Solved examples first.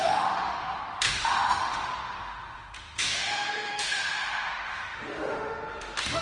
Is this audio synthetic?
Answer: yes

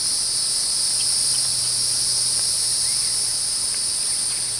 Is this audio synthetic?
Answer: no